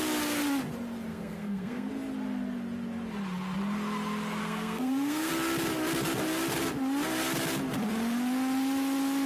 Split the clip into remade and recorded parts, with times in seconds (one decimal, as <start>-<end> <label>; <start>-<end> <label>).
0.0-1.1 recorded; 1.1-1.9 remade; 1.9-4.4 recorded; 4.4-5.3 remade; 5.3-9.3 recorded